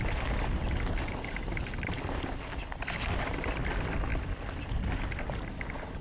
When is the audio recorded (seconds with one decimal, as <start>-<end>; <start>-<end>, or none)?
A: 0.0-6.0